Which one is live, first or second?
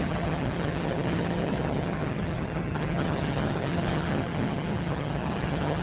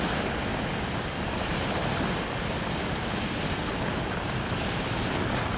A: second